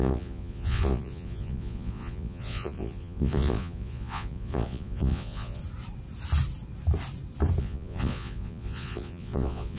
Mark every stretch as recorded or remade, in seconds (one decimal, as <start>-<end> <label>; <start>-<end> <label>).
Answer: 0.0-5.6 remade; 5.6-7.6 recorded; 7.6-9.8 remade